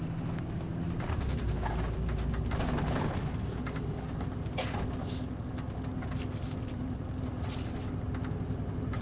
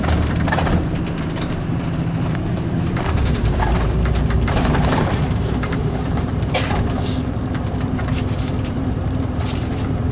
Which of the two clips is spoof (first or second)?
second